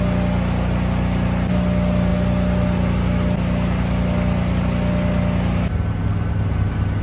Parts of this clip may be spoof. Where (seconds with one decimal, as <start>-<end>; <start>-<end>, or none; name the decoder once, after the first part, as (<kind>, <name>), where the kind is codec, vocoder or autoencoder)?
none

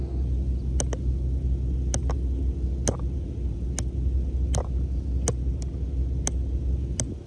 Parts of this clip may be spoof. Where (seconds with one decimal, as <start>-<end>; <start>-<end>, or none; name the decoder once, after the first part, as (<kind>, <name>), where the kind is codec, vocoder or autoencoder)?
none

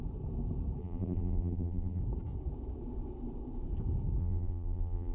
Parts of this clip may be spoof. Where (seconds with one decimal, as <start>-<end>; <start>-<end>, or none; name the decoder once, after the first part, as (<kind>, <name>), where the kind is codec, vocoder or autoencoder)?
0.8-2.0 (vocoder, BigVGAN v2); 4.2-5.1